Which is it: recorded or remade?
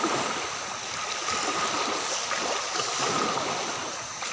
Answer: recorded